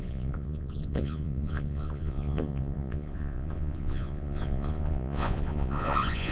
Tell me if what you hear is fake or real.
fake